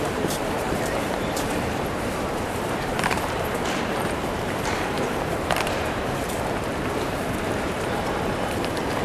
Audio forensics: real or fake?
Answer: fake